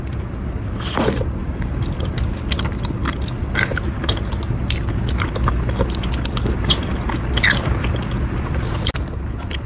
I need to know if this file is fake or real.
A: real